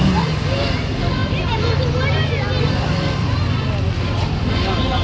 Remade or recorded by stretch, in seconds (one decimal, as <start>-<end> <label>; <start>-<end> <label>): 0.0-5.0 recorded